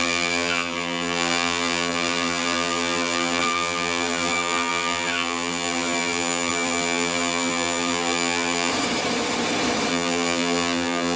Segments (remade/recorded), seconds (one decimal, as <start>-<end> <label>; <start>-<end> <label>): 0.0-8.7 remade; 8.7-9.9 recorded; 9.9-11.2 remade